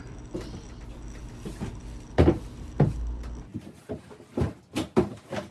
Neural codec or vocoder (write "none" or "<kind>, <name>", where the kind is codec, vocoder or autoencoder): none